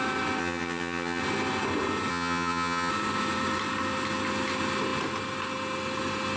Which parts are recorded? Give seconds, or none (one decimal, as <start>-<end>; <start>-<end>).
0.0-0.4; 1.2-2.1; 2.9-6.4